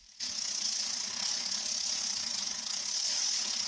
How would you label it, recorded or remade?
remade